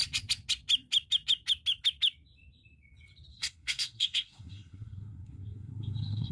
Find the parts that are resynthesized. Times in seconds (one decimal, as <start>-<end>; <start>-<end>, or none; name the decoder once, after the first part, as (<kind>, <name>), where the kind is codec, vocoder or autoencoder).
3.3-6.3 (codec, SNAC)